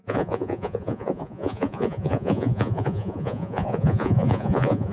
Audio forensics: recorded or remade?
remade